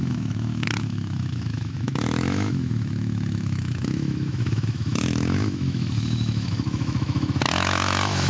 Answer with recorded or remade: remade